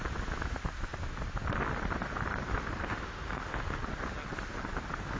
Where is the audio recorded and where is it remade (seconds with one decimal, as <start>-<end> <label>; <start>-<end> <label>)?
0.0-2.8 recorded; 2.8-3.8 remade; 3.8-5.2 recorded